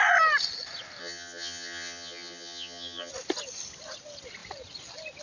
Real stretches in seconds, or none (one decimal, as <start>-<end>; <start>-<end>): 0.0-1.0; 3.1-5.2